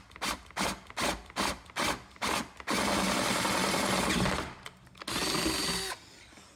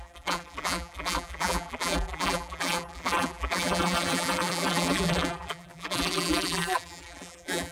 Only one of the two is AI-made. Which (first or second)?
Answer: second